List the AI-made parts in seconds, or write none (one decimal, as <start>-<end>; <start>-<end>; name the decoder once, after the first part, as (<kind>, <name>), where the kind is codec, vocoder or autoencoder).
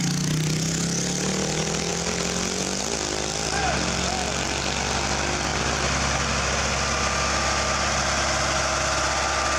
none